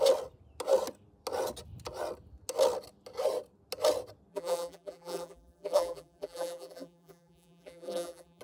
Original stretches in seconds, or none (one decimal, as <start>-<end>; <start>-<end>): 0.0-4.3